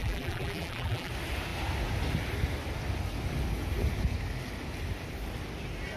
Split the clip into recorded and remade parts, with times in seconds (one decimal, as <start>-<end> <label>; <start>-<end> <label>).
0.0-1.1 remade; 1.1-6.0 recorded